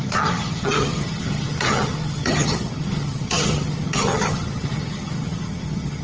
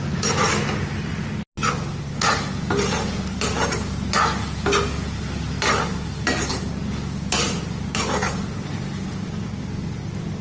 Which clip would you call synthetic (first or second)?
first